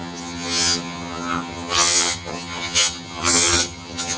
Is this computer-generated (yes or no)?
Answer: yes